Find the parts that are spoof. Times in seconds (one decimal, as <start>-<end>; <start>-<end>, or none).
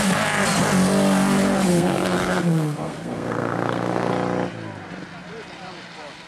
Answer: 1.7-4.1